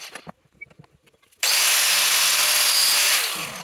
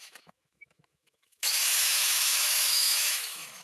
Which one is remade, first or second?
second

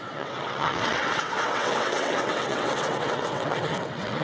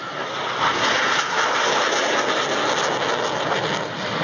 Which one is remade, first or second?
first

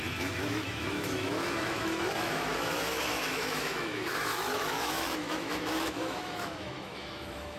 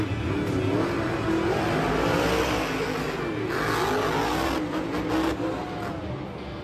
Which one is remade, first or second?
first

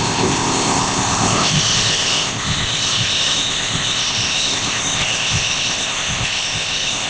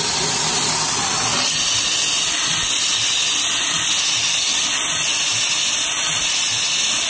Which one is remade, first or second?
first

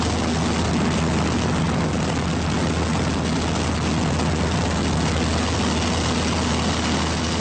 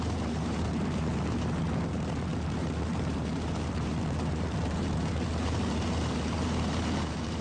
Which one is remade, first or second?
second